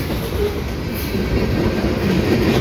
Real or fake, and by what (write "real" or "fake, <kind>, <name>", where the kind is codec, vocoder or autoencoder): real